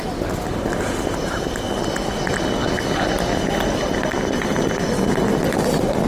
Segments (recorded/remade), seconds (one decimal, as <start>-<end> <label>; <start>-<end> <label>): 0.0-6.1 recorded